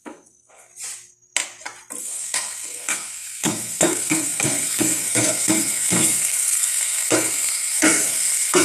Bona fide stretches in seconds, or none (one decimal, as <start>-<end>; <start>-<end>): 0.7-2.0